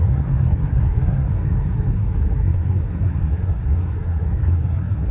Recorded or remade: remade